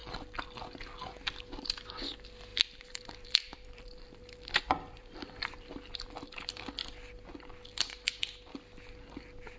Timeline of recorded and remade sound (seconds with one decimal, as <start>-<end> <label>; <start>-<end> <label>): 0.0-2.5 recorded; 2.5-6.5 remade; 6.5-9.6 recorded